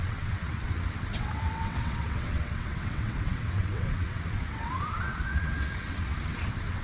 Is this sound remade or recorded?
remade